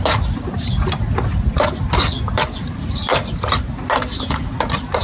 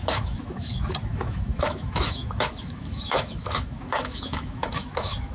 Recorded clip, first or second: first